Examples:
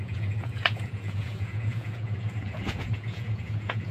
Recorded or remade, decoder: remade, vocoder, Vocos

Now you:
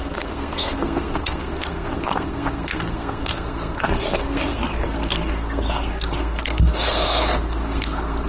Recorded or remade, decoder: remade, codec, SNAC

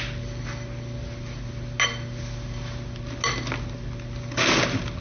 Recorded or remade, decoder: recorded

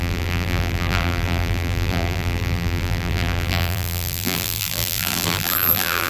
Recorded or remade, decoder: remade, vocoder, BigVGAN v2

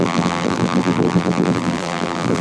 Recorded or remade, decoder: remade, vocoder, BigVGAN v2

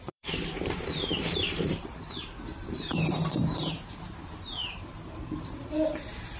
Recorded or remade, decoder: remade, vocoder, BigVGAN v2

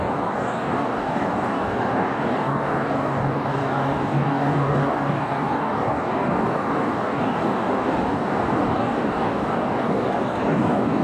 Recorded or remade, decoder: remade, codec, DAC